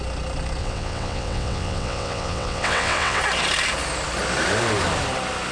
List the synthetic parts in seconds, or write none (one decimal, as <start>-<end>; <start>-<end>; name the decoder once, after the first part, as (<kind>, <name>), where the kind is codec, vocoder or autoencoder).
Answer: 0.6-3.2 (vocoder, WaveNeXt)